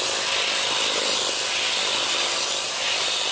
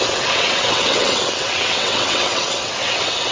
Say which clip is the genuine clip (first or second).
first